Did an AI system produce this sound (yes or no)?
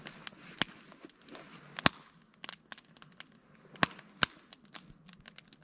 no